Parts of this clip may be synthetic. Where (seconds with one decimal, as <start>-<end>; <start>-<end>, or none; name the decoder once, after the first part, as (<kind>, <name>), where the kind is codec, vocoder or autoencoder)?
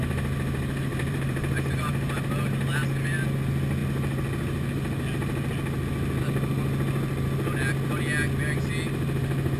0.9-1.9 (vocoder, BigVGAN v2)